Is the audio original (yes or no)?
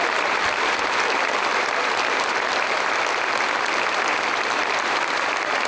no